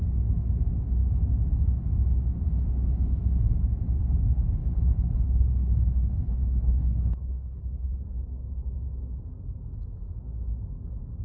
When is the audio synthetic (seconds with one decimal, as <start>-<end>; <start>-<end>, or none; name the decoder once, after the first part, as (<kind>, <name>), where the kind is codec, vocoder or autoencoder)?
4.6-8.0 (codec, HILCodec)